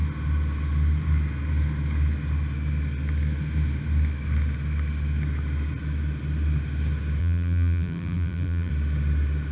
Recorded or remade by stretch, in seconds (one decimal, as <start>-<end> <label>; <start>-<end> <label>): 0.0-7.2 recorded; 7.2-8.7 remade; 8.7-9.5 recorded